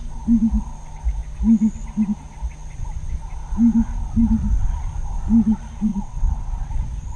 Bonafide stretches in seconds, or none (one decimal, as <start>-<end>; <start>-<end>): 0.0-5.9; 6.7-7.2